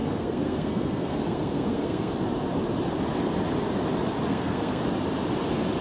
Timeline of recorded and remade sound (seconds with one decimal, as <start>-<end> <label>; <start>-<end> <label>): 0.0-2.1 remade; 2.1-4.3 recorded; 4.3-4.8 remade; 4.8-5.8 recorded